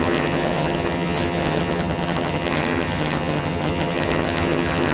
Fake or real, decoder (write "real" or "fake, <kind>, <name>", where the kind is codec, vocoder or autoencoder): fake, vocoder, HiFi-GAN